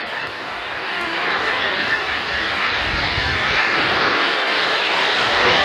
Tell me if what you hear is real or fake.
fake